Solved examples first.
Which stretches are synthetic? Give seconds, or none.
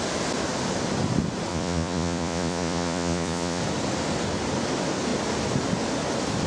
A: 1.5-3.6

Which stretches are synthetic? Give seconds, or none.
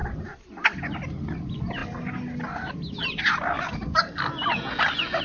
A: 0.0-1.8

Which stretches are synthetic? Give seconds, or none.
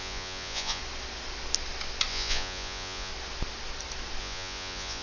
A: 0.0-0.8; 2.1-3.1; 4.2-5.0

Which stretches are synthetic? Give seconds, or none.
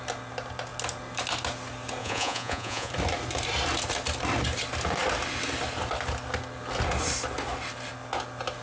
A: 2.0-2.9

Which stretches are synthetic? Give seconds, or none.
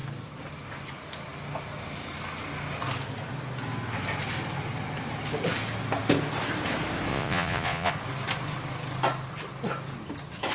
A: 7.1-7.9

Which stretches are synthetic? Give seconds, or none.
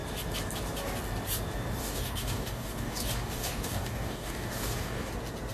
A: 1.8-5.1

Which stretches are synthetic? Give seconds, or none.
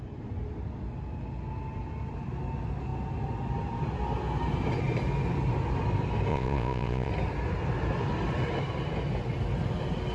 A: 6.3-7.1